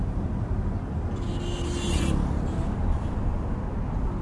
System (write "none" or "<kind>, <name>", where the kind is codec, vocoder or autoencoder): none